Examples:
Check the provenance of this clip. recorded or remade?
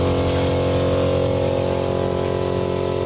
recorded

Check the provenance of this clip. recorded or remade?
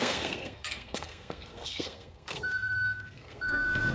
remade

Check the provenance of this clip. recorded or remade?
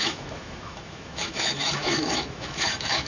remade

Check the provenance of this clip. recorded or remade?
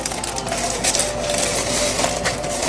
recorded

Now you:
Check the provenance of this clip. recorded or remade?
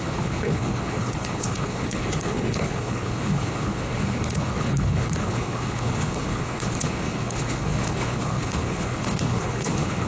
remade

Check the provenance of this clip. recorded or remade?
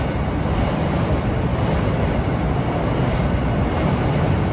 recorded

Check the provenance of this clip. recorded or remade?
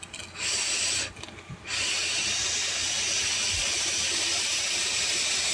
recorded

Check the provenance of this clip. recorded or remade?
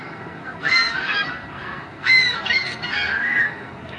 remade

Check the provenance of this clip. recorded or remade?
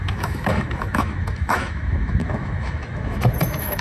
remade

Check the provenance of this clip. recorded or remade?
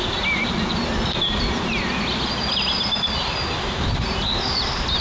recorded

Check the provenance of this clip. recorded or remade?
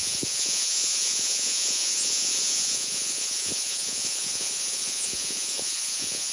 remade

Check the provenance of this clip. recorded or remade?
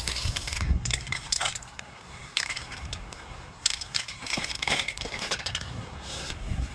remade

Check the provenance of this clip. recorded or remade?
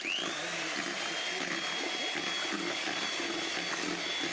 recorded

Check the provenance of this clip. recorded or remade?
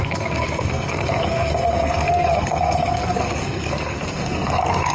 remade